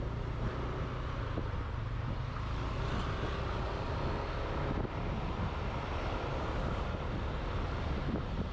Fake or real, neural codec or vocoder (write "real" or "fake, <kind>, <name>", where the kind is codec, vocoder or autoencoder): real